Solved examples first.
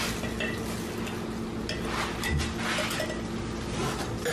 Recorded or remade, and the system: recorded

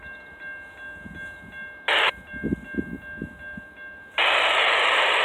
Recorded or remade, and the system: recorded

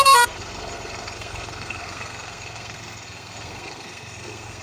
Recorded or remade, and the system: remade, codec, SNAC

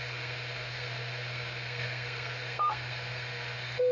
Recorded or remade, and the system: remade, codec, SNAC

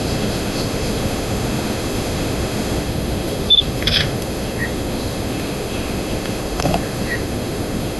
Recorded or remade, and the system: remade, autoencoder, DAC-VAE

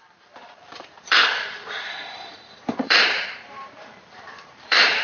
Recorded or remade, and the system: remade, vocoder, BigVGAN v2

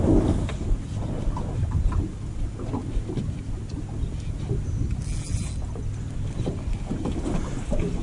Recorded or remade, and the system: recorded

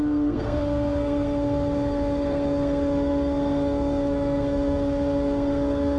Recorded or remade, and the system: remade, codec, SNAC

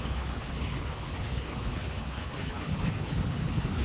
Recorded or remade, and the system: remade, codec, HILCodec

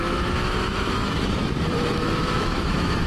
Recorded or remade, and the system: remade, autoencoder, DAC-VAE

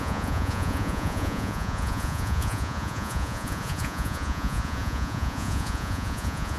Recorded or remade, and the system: remade, vocoder, Vocos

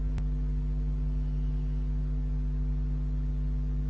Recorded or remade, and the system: recorded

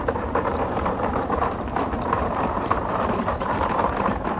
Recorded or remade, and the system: remade, vocoder, BigVGAN v2